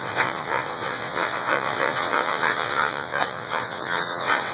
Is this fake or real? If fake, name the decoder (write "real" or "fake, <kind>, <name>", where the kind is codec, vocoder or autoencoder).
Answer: fake, vocoder, WaveNeXt